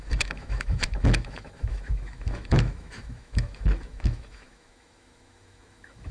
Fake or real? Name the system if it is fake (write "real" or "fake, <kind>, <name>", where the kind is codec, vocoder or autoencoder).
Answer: fake, autoencoder, DAC-VAE